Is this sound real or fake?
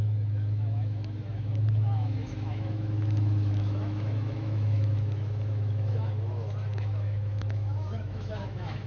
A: fake